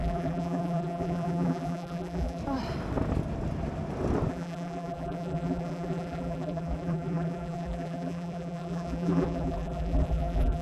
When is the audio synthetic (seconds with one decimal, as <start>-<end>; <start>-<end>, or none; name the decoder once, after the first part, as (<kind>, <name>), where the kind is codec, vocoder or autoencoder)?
0.0-2.4 (vocoder, BigVGAN v2); 4.3-10.6